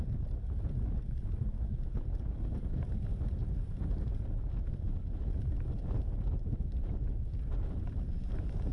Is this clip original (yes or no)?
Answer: yes